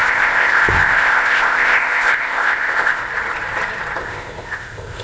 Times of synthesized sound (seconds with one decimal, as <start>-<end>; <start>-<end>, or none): 0.0-3.0; 4.0-5.0